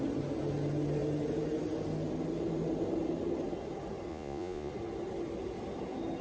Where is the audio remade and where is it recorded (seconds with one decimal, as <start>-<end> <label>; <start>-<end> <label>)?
0.0-4.1 recorded; 4.1-4.7 remade; 4.7-6.2 recorded